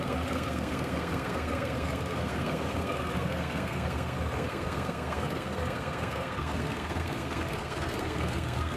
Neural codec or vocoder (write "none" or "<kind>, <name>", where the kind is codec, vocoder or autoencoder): codec, SNAC